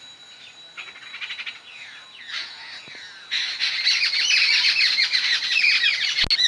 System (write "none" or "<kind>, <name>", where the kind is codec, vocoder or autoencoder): none